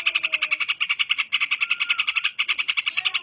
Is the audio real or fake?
real